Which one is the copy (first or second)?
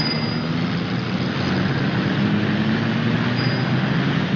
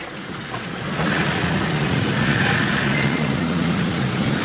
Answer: second